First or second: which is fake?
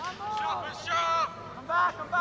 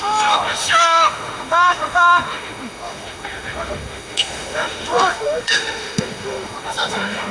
second